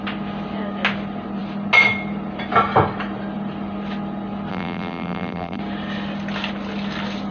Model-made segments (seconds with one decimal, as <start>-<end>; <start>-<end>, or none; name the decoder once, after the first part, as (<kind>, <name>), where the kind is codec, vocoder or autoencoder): 4.5-5.6 (vocoder, BigVGAN v2)